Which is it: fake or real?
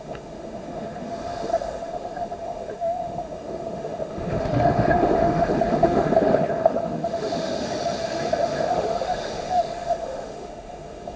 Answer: fake